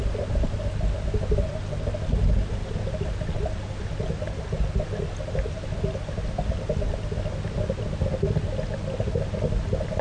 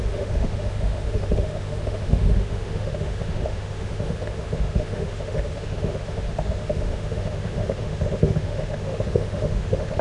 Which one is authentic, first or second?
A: first